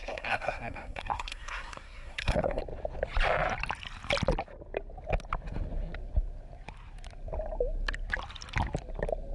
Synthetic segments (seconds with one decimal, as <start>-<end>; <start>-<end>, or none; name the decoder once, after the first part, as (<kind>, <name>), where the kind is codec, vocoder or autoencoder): 0.0-2.6 (codec, SNAC)